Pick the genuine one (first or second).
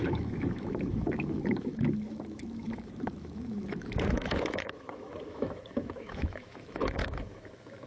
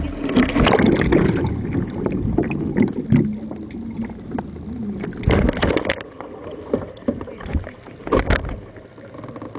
second